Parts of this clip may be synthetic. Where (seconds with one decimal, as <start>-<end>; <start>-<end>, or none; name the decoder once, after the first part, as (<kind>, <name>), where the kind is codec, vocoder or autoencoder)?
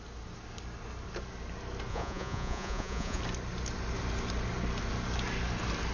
1.9-3.2 (vocoder, Vocos)